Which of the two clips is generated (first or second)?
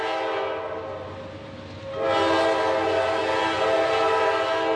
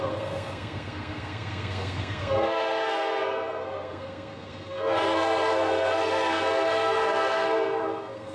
second